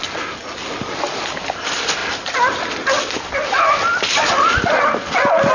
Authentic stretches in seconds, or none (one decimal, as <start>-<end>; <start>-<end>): 0.0-5.5